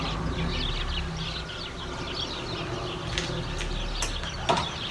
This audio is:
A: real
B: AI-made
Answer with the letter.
A